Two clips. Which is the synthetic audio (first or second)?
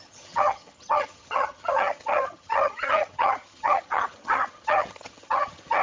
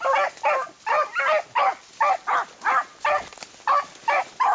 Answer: first